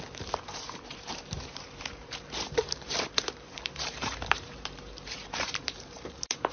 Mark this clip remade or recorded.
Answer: remade